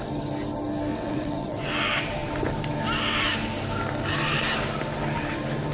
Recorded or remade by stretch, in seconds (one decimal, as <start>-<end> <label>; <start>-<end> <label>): 0.0-0.9 recorded; 0.9-1.7 remade; 1.7-5.7 recorded